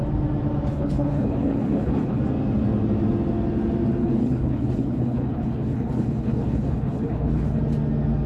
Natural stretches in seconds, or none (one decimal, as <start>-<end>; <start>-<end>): 0.0-0.7; 2.2-4.0; 7.6-8.3